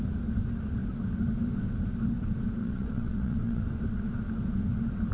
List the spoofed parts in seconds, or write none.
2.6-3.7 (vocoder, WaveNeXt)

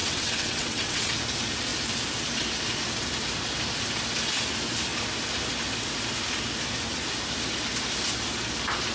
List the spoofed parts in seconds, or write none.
0.0-1.1 (vocoder, WaveNeXt)

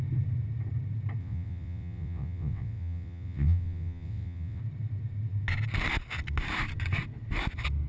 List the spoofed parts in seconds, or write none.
1.2-4.6 (vocoder, WaveNeXt)

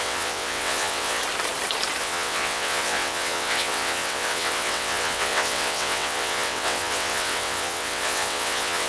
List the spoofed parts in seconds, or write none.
0.0-1.2 (vocoder, WaveNeXt); 2.0-8.9

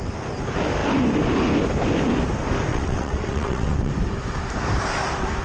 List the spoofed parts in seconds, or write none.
2.7-3.9 (vocoder, WaveNeXt)

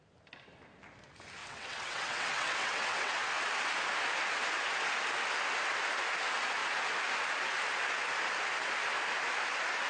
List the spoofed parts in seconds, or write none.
1.4-3.1 (vocoder, WaveNeXt)